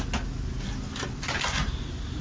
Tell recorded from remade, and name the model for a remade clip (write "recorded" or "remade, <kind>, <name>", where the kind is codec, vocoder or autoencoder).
recorded